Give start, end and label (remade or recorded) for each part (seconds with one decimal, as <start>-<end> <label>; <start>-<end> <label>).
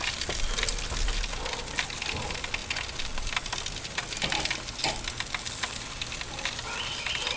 0.0-7.4 recorded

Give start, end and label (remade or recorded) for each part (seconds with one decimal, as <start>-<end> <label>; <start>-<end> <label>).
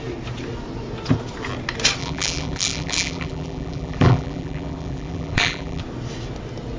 0.0-2.0 recorded; 2.0-5.8 remade; 5.8-6.8 recorded